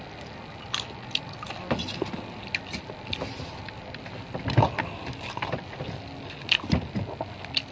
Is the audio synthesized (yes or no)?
no